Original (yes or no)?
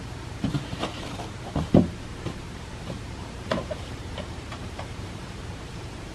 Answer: no